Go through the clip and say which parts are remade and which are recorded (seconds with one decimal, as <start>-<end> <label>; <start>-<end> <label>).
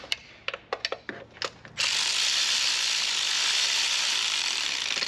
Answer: 0.0-5.1 recorded